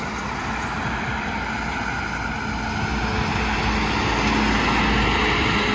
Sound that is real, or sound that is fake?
real